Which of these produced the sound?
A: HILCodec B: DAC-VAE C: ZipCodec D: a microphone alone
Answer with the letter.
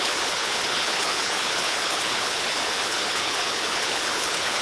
A